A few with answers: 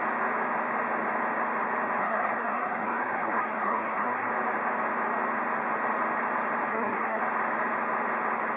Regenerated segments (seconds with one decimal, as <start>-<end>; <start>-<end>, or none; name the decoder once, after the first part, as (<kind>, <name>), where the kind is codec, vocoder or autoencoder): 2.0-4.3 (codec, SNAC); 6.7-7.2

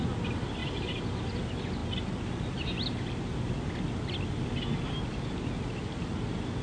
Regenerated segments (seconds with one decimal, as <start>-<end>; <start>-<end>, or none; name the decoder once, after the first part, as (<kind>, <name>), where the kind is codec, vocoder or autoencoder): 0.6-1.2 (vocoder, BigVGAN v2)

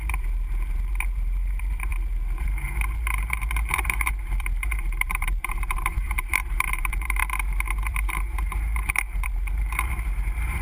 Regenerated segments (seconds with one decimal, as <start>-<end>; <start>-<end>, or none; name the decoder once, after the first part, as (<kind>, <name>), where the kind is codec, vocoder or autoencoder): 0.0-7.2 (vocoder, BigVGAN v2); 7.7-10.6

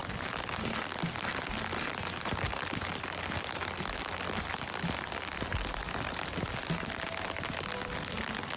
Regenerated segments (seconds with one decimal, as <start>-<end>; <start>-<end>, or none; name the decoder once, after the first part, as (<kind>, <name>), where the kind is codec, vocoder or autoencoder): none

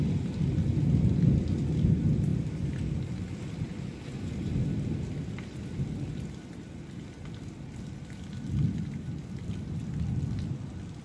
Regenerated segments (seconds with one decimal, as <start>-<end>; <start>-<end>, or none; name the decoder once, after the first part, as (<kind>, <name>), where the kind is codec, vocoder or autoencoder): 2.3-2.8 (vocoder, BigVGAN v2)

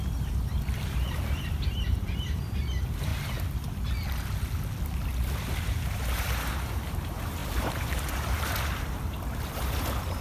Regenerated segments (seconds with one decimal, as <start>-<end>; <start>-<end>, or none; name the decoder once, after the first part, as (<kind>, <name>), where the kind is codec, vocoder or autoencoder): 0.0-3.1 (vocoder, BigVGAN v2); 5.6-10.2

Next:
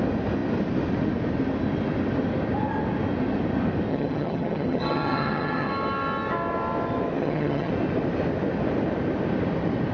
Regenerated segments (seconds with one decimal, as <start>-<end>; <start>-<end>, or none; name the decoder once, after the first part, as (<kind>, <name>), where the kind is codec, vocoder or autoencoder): 3.9-5.7 (vocoder, HiFi-GAN); 7.2-7.7

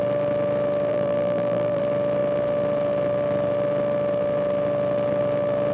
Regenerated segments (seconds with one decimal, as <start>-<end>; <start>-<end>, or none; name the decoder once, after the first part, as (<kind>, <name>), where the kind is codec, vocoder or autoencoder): 0.9-1.8 (vocoder, BigVGAN v2)